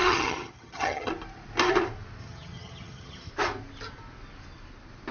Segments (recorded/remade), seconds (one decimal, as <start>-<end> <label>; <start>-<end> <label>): 0.0-1.1 remade; 1.1-2.2 recorded; 2.2-3.3 remade; 3.3-5.1 recorded